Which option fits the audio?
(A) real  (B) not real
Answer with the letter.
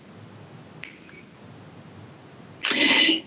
A